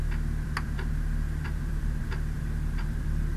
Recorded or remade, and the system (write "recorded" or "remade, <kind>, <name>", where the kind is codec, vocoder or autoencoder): remade, vocoder, BigVGAN v2